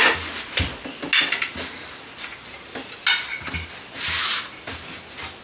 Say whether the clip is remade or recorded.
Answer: recorded